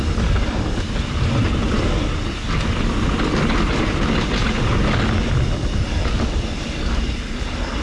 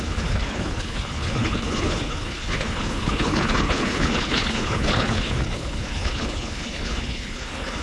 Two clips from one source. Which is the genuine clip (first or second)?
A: first